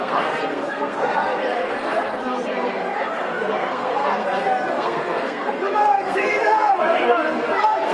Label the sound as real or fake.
fake